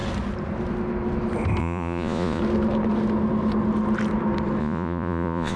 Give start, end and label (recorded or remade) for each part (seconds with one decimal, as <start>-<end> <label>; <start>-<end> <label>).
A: 0.0-1.6 recorded; 1.6-2.4 remade; 2.4-4.6 recorded; 4.6-5.6 remade